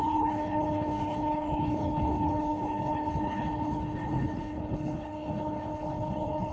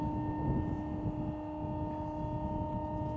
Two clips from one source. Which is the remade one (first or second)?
first